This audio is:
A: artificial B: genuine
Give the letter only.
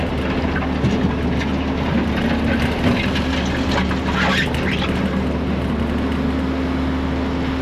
B